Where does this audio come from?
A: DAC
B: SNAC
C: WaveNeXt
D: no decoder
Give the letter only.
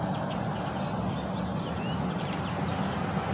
D